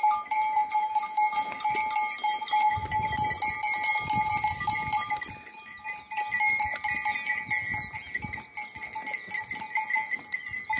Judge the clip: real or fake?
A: real